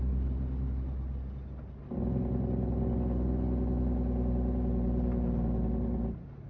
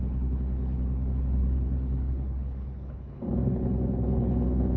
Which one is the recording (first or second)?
first